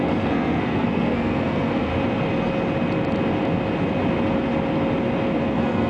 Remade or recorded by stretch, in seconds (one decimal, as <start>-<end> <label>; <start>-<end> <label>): 0.0-1.9 remade; 1.9-5.4 recorded; 5.4-5.9 remade